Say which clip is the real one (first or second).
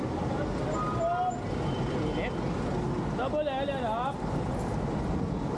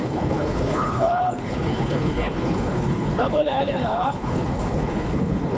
first